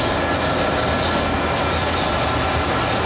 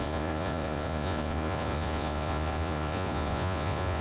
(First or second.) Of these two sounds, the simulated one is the second